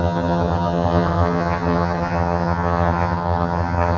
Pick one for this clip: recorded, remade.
remade